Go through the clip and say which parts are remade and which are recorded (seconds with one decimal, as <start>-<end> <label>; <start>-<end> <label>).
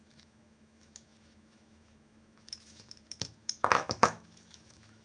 0.0-5.0 remade